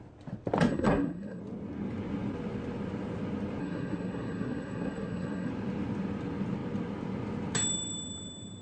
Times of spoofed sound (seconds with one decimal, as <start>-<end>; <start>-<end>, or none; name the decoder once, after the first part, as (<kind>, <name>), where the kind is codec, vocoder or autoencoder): 0.7-1.4 (codec, SNAC); 3.6-5.5